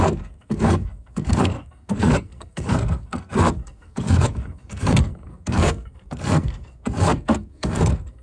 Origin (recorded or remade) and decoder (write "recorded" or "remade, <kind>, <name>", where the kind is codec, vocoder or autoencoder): remade, codec, SNAC